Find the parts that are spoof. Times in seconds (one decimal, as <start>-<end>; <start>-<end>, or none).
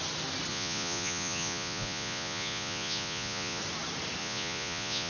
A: 0.5-3.6; 4.2-5.1